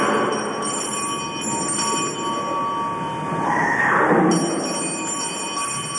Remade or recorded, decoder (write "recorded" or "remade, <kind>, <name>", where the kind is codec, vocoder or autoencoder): recorded